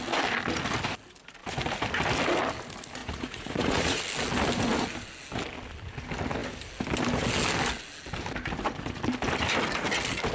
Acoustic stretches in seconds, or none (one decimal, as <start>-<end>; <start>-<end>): 0.0-3.0; 4.0-10.3